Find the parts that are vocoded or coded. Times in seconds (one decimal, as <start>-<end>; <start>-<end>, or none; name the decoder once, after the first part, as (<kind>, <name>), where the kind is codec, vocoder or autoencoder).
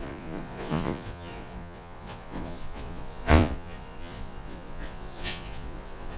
0.0-6.2 (vocoder, Vocos)